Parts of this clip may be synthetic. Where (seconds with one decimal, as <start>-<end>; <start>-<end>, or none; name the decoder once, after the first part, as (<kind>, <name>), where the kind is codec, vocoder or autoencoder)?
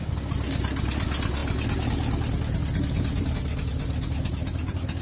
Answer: none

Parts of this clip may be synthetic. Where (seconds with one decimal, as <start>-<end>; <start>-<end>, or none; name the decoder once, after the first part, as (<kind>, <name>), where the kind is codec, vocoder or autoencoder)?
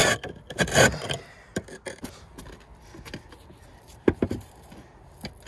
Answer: 3.7-4.7 (vocoder, BigVGAN v2)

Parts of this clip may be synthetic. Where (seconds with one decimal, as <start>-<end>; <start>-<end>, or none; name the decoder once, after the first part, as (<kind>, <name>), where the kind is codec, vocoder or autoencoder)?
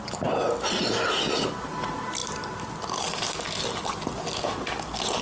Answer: none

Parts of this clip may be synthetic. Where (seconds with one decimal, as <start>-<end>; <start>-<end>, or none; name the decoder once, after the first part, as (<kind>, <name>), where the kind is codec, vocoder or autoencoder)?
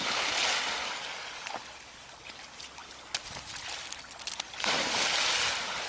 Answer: none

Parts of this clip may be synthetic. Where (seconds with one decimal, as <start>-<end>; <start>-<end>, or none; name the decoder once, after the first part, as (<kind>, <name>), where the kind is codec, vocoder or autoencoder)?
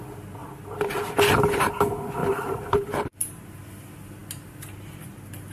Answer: 2.2-2.9 (vocoder, BigVGAN v2)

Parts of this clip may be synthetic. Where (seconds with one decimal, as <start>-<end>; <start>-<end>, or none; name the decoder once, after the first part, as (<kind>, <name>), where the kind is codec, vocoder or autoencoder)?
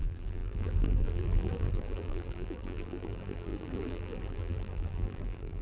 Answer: 0.0-5.6 (vocoder, BigVGAN v2)